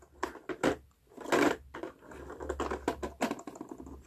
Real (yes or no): yes